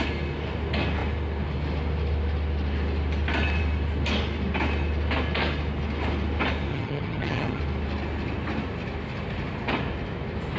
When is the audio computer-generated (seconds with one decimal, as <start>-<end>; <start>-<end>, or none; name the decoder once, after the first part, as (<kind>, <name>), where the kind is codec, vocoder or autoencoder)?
6.7-7.6 (vocoder, HiFi-GAN)